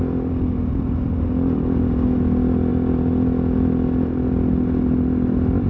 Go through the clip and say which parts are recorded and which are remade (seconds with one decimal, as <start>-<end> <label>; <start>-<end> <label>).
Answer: 0.0-5.7 recorded

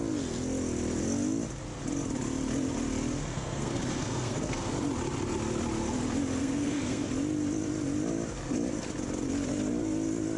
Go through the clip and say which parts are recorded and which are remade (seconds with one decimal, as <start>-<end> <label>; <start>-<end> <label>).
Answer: 0.0-3.3 recorded; 3.3-4.7 remade; 4.7-6.4 recorded; 6.4-7.1 remade; 7.1-10.4 recorded

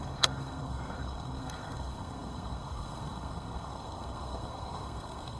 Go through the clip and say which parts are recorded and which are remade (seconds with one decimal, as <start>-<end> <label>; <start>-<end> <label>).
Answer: 0.0-5.4 remade

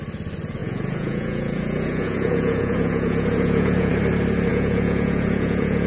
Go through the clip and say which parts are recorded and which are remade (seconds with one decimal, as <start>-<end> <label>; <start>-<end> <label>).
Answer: 0.0-0.6 recorded; 0.6-3.9 remade; 3.9-4.5 recorded; 4.5-5.9 remade

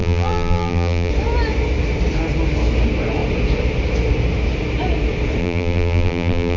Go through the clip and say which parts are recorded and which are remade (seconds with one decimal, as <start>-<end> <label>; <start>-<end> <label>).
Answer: 0.0-1.1 remade; 1.1-5.4 recorded; 5.4-6.6 remade

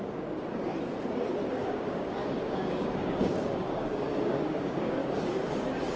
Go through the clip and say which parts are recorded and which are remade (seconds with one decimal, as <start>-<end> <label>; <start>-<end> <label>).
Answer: 0.0-0.7 remade; 0.7-1.5 recorded; 1.5-5.0 remade; 5.0-6.0 recorded

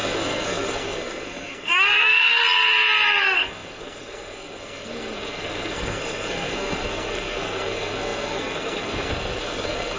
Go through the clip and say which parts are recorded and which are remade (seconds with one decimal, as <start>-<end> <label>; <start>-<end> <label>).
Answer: 0.0-2.4 remade; 2.4-3.2 recorded; 3.2-10.0 remade

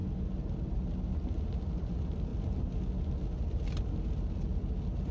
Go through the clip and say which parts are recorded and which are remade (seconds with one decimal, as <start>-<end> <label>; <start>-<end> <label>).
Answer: 0.0-1.4 recorded; 1.4-2.3 remade; 2.3-5.1 recorded